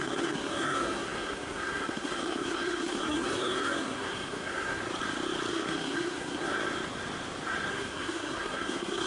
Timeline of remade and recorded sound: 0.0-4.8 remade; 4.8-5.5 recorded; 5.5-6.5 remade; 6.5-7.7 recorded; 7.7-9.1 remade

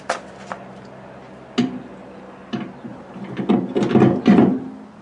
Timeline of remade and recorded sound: 0.0-5.0 recorded

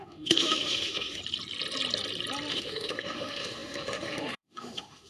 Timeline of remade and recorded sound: 0.0-1.2 remade; 1.2-2.5 recorded; 2.5-5.1 remade

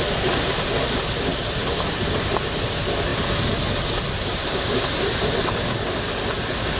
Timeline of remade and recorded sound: 0.0-6.8 recorded

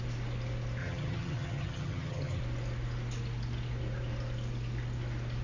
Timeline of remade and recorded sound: 0.0-0.8 recorded; 0.8-2.4 remade; 2.4-5.4 recorded

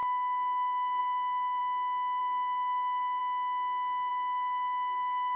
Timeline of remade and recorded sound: 0.0-1.6 remade; 1.6-2.2 recorded; 2.2-3.2 remade; 3.2-4.1 recorded; 4.1-5.4 remade